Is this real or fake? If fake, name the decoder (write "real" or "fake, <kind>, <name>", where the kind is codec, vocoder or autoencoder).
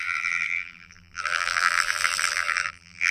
fake, vocoder, BigVGAN v2